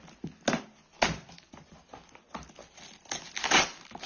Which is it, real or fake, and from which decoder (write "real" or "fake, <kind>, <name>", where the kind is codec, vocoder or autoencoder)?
real